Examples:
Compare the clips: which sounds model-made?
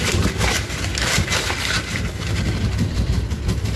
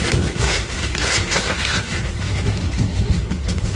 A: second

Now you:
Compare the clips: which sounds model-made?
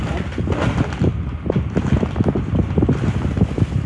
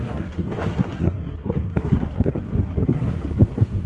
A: second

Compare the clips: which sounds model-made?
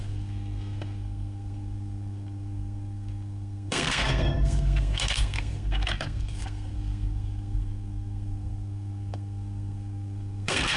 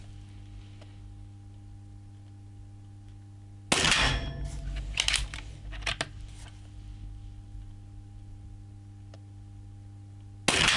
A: first